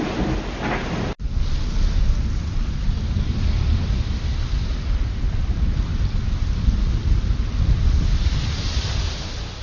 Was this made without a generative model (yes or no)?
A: yes